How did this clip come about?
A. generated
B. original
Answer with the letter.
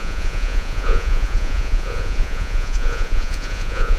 A